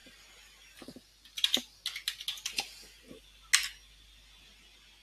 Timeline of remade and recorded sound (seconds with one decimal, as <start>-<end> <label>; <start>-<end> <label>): 0.0-5.0 recorded